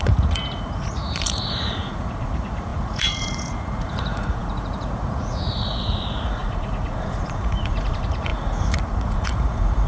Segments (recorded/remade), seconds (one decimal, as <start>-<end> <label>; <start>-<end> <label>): 0.0-9.9 remade